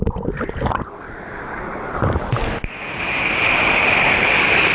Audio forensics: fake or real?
fake